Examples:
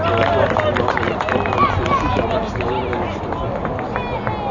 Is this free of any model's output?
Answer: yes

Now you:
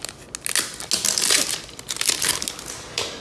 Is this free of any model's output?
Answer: yes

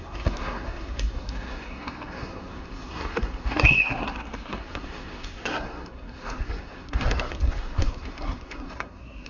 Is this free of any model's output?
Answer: no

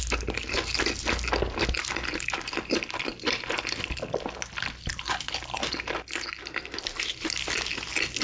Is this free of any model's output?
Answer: yes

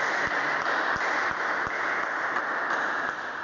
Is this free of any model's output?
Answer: yes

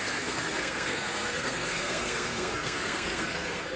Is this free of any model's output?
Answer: no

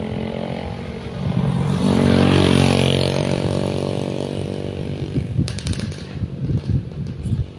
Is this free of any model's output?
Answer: no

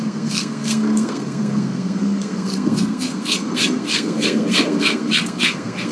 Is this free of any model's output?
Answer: no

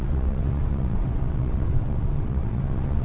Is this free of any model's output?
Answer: no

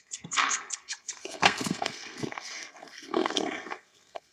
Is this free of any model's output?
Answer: no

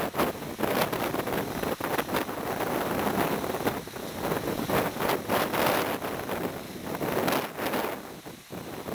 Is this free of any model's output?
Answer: yes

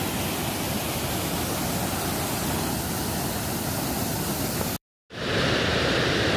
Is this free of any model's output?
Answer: yes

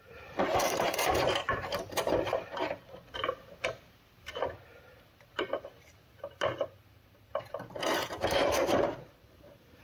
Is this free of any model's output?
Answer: no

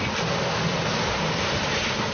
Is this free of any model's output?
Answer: yes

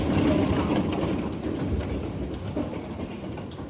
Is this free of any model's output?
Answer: yes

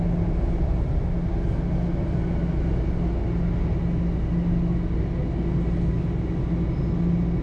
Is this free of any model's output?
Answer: yes